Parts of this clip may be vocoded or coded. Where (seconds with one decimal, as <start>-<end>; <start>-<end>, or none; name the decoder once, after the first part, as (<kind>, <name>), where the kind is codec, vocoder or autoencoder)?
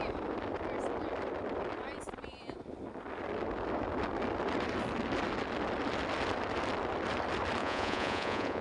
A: 7.6-8.6 (vocoder, Vocos)